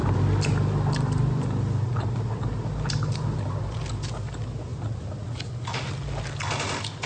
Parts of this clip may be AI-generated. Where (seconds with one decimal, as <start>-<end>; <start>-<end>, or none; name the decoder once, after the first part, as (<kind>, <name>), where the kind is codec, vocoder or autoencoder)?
none